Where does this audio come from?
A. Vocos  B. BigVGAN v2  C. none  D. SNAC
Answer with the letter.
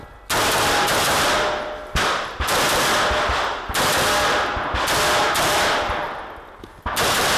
C